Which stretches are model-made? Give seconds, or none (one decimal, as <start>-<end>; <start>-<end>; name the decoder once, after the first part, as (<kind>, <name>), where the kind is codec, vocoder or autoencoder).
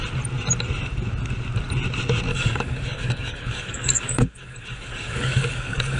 2.3-6.0 (codec, DAC)